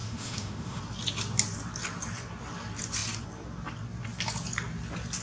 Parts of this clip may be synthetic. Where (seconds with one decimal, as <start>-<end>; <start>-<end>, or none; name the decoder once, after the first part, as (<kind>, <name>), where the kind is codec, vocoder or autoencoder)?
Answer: 0.0-0.8 (autoencoder, DAC-VAE)